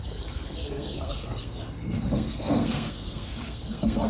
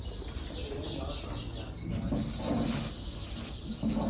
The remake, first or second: first